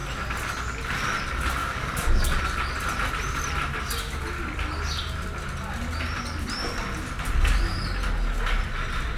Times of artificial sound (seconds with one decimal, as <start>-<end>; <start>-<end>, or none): 1.6-2.4